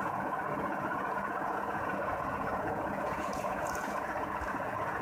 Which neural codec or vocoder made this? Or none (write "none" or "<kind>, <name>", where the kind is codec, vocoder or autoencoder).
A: vocoder, Vocos